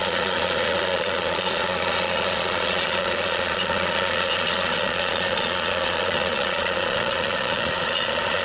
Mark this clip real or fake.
fake